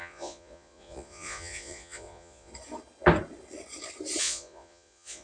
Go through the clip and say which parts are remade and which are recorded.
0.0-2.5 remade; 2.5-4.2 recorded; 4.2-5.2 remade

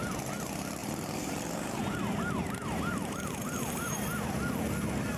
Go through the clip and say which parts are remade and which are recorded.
0.0-0.8 recorded; 0.8-3.9 remade; 3.9-5.2 recorded

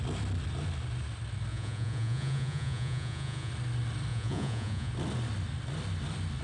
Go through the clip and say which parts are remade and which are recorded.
0.0-1.5 recorded; 1.5-3.5 remade; 3.5-4.1 recorded; 4.1-4.9 remade; 4.9-6.4 recorded

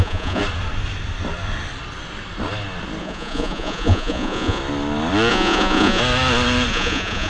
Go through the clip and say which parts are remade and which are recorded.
0.0-0.4 remade; 0.4-3.0 recorded; 3.0-4.6 remade; 4.6-5.3 recorded; 5.3-6.0 remade; 6.0-6.7 recorded; 6.7-7.3 remade

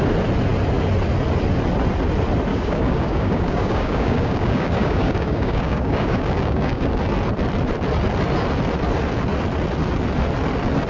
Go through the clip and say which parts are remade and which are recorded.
0.0-2.5 recorded; 2.5-6.9 remade; 6.9-10.9 recorded